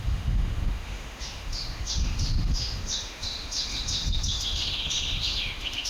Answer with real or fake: fake